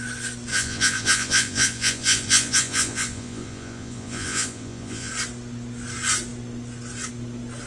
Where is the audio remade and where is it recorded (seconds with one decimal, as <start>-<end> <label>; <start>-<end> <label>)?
0.0-0.5 recorded; 0.5-5.1 remade; 5.1-7.7 recorded